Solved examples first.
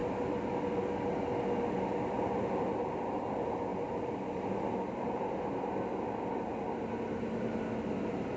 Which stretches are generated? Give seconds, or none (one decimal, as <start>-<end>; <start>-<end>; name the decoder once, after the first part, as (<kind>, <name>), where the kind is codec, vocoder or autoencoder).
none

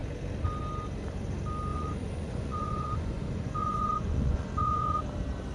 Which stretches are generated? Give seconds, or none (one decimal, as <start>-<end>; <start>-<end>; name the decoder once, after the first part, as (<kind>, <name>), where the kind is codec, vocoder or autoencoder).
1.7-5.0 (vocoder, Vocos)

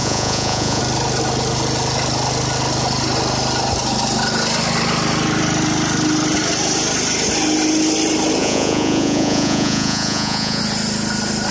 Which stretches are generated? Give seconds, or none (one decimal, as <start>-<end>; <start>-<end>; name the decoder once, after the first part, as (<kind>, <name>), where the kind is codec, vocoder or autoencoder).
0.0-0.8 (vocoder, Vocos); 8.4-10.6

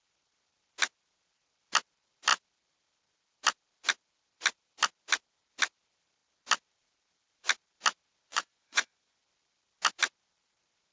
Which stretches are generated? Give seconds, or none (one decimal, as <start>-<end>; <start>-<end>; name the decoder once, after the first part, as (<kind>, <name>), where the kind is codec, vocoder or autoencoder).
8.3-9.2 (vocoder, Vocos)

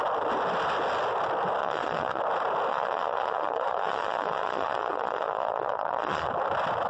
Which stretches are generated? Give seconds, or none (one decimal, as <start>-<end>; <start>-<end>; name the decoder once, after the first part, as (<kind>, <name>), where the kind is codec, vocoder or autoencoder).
1.6-2.2 (vocoder, Vocos); 2.7-6.3

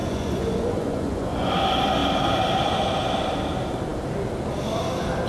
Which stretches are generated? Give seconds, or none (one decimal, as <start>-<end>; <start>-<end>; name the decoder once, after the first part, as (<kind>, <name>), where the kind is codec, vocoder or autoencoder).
0.0-1.5 (vocoder, Vocos)

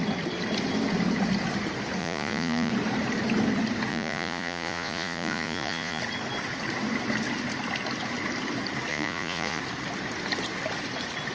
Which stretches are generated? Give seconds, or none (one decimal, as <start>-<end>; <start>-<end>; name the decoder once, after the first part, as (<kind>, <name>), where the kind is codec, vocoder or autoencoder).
2.0-2.7 (vocoder, Vocos); 3.9-6.0; 8.9-9.6

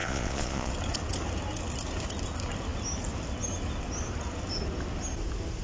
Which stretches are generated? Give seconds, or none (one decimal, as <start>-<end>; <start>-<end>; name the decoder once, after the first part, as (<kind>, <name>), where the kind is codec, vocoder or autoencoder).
0.0-0.7 (vocoder, Vocos)